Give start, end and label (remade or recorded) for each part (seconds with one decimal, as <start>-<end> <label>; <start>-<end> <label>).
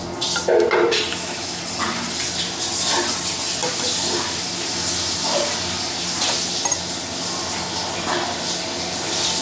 0.0-1.1 recorded; 1.1-1.6 remade; 1.6-9.4 recorded